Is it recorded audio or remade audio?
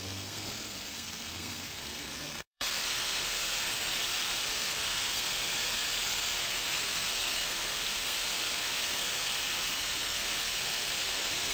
remade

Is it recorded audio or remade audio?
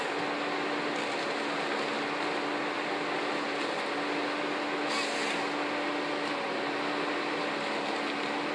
recorded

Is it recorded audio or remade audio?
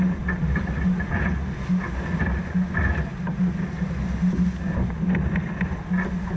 recorded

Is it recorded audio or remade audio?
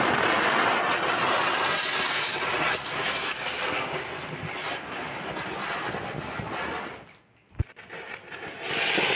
recorded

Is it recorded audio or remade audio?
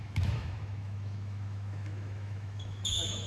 remade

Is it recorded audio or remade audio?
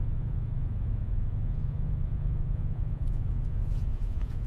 remade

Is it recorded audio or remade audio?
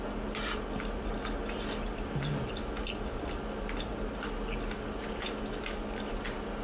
recorded